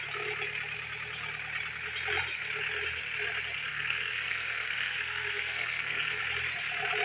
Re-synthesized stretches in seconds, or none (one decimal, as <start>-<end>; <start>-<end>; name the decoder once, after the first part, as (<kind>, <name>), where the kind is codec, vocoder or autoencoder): 3.7-6.2 (codec, SNAC)